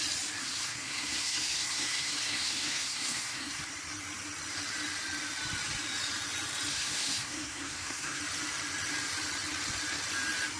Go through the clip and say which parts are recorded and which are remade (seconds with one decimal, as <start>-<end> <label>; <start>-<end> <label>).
0.0-0.4 recorded; 0.4-3.6 remade; 3.6-6.7 recorded; 6.7-8.2 remade; 8.2-10.6 recorded